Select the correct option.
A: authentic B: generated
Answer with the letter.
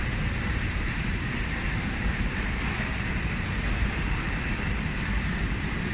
B